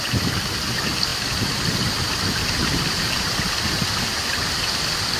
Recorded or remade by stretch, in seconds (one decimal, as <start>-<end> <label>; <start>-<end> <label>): 0.0-5.2 recorded